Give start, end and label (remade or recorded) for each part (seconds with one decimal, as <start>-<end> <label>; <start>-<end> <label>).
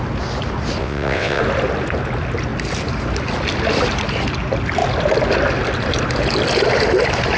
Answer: 0.0-0.8 recorded; 0.8-1.4 remade; 1.4-7.4 recorded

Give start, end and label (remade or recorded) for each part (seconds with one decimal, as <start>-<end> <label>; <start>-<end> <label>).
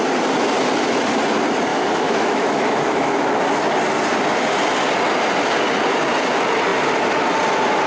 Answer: 0.0-1.7 recorded; 1.7-3.3 remade; 3.3-7.9 recorded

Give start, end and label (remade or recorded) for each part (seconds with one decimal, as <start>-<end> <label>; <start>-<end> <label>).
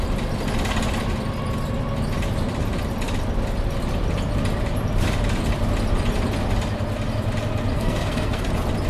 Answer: 0.0-7.7 recorded; 7.7-8.5 remade; 8.5-8.9 recorded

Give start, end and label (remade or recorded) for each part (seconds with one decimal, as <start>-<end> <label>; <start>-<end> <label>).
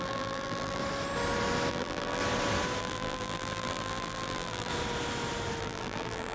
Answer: 0.0-0.8 remade; 0.8-1.7 recorded; 1.7-2.2 remade; 2.2-2.8 recorded; 2.8-4.7 remade; 4.7-5.6 recorded; 5.6-6.3 remade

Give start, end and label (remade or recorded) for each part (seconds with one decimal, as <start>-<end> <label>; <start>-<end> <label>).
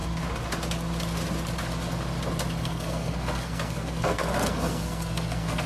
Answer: 0.0-2.6 recorded; 2.6-5.7 remade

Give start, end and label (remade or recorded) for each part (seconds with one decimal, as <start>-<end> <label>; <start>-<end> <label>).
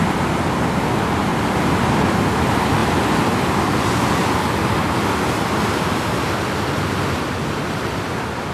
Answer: 0.0-8.5 recorded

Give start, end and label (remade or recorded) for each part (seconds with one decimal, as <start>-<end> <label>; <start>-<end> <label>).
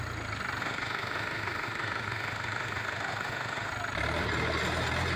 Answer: 0.0-0.6 recorded; 0.6-3.7 remade; 3.7-5.2 recorded